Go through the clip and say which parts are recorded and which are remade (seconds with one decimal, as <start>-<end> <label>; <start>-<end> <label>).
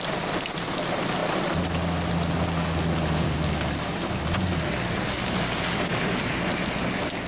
0.0-7.3 recorded